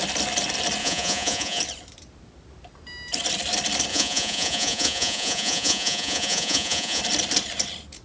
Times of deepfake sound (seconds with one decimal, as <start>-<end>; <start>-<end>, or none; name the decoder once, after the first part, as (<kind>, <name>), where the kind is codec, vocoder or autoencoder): 0.8-1.6 (vocoder, Vocos); 3.9-7.0